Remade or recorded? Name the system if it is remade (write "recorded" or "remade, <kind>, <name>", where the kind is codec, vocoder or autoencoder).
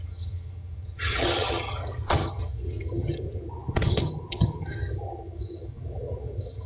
remade, vocoder, HiFi-GAN